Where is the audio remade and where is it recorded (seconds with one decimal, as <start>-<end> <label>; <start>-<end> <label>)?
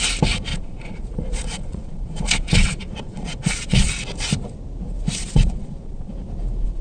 0.0-0.5 recorded; 0.5-3.9 remade; 3.9-5.2 recorded; 5.2-6.1 remade; 6.1-6.8 recorded